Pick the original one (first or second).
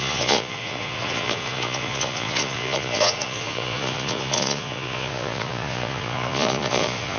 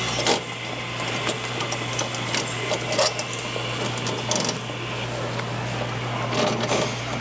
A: second